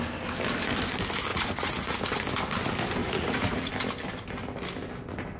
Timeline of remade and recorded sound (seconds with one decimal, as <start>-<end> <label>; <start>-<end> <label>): 0.0-1.3 recorded; 1.3-2.0 remade; 2.0-3.0 recorded; 3.0-3.7 remade; 3.7-5.4 recorded